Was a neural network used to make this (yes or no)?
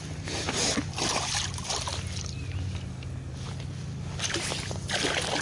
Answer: no